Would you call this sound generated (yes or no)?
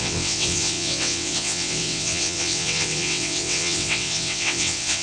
yes